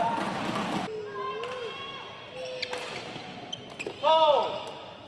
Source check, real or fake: real